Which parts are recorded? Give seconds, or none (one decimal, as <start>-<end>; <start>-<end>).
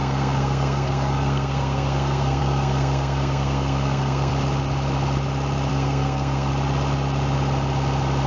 4.3-5.7; 6.5-8.3